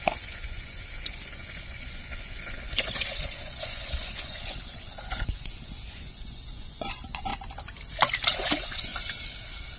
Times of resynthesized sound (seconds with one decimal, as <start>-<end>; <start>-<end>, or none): 0.0-7.3; 8.3-8.9